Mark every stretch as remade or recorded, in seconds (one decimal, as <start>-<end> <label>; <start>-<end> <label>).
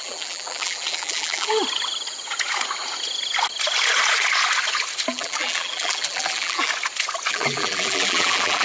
0.0-1.6 remade; 1.6-5.1 recorded; 5.1-6.7 remade; 6.7-7.3 recorded; 7.3-8.6 remade